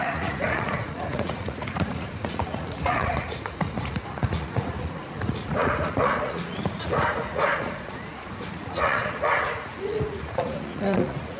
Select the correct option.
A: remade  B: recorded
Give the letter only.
A